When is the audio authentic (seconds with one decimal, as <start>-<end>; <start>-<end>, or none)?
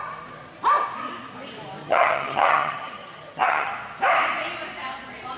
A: 0.0-1.8; 3.7-5.4